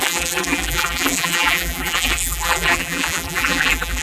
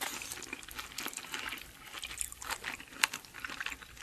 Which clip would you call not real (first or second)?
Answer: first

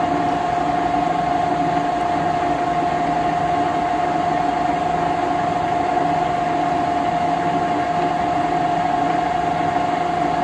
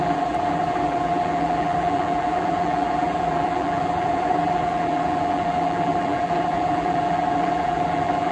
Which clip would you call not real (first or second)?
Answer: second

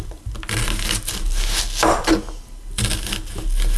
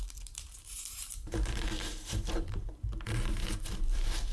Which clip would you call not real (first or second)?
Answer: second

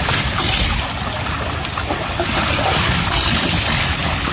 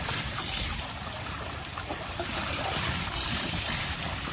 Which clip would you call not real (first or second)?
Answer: second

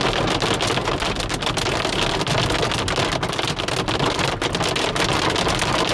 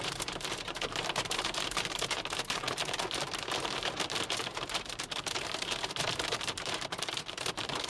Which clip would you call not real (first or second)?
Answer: second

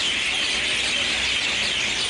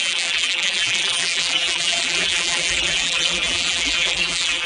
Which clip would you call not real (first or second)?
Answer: second